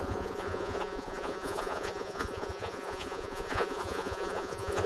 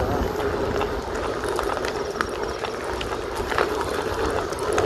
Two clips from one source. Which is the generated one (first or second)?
first